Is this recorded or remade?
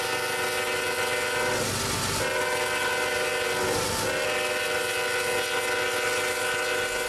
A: recorded